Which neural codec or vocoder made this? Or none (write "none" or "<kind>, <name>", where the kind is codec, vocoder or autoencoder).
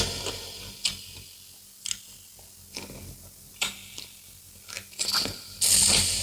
none